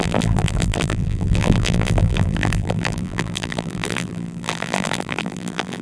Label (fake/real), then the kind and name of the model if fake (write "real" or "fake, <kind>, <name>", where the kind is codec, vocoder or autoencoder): fake, vocoder, BigVGAN v2